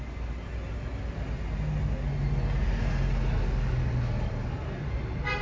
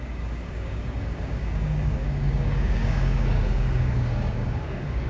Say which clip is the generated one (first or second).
second